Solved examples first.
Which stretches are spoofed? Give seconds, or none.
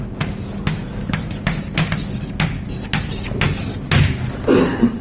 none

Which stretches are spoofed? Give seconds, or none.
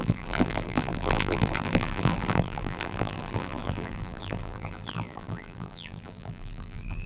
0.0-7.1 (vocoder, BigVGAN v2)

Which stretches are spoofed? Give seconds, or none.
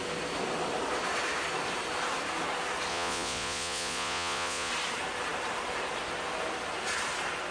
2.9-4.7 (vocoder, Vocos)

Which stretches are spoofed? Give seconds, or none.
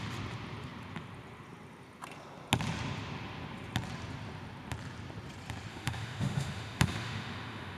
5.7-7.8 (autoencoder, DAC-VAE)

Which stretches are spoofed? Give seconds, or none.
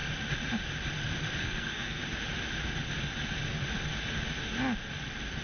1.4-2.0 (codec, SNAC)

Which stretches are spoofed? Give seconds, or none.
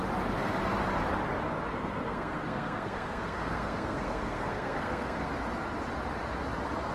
1.7-5.3 (codec, SNAC)